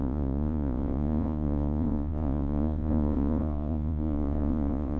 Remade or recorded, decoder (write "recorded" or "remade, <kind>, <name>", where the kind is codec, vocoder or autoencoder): remade, vocoder, Vocos